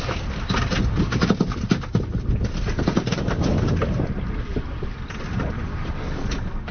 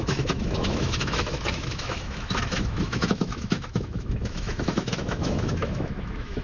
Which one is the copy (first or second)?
second